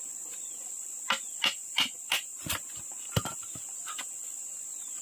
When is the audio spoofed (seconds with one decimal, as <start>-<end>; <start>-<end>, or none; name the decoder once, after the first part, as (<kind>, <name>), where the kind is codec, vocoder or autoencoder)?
1.6-4.2 (vocoder, BigVGAN v2)